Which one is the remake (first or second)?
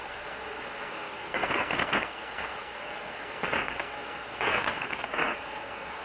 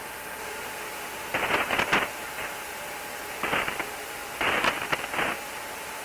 first